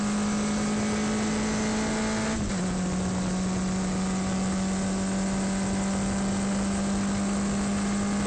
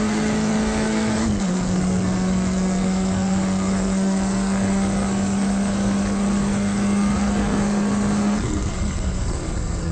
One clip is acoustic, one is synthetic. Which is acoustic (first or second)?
first